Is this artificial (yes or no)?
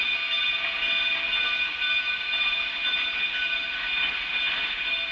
no